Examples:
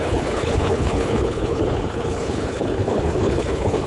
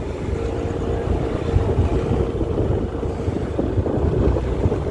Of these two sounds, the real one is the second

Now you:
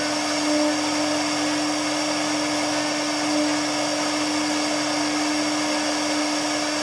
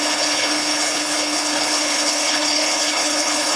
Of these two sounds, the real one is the first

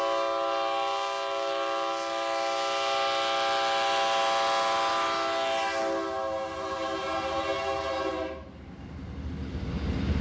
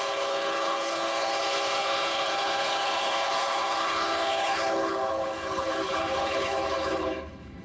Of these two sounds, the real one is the first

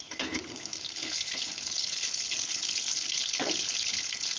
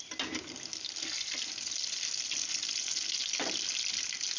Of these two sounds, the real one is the second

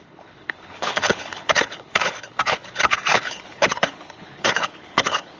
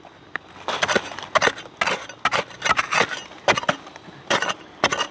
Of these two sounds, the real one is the second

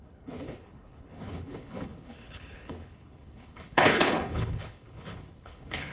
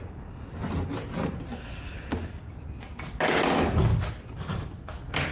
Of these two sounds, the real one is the second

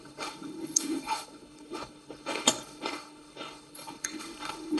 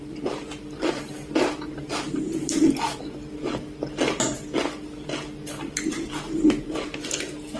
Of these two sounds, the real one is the second